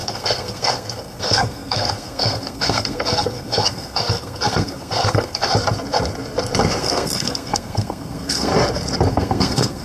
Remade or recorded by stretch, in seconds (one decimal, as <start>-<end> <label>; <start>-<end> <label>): 0.0-5.5 remade; 5.5-6.8 recorded; 6.8-8.5 remade; 8.5-9.1 recorded; 9.1-9.8 remade